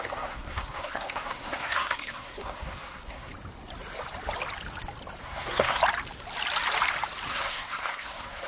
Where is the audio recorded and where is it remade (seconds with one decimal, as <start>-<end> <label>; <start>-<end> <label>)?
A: 0.0-3.3 remade; 3.3-5.2 recorded; 5.2-5.8 remade; 5.8-7.3 recorded; 7.3-8.5 remade